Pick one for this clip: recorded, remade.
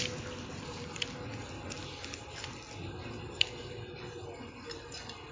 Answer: recorded